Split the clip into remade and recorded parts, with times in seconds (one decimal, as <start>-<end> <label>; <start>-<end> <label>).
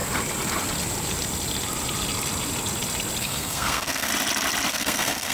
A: 0.0-3.2 recorded; 3.2-4.1 remade; 4.1-4.7 recorded; 4.7-5.3 remade